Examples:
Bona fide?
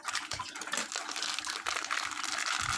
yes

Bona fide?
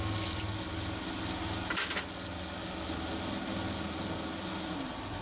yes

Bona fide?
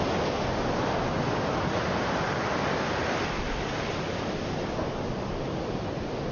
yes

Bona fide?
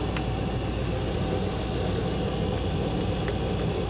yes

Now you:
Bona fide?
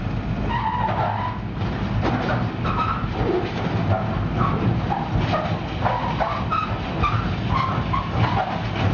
yes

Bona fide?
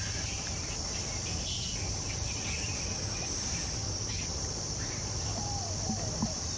yes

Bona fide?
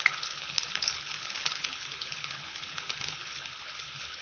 no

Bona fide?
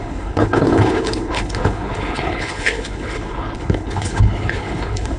no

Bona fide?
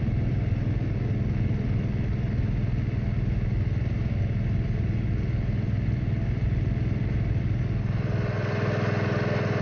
yes